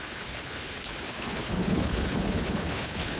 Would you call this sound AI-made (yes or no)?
yes